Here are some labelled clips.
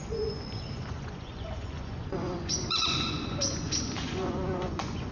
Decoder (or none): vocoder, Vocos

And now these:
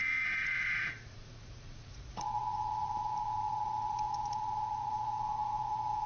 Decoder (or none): vocoder, Vocos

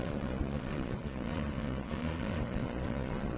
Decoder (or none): vocoder, Vocos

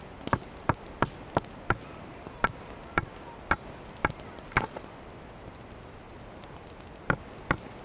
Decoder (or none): none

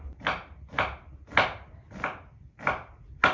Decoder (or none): none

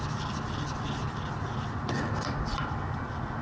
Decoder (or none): none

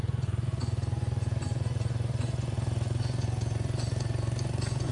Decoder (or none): vocoder, Vocos